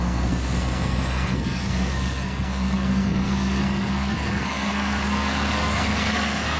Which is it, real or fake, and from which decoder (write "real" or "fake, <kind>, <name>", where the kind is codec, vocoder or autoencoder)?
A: fake, codec, SNAC